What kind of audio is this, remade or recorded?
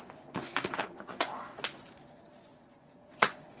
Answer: remade